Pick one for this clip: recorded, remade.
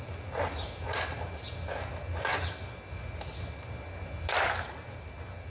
recorded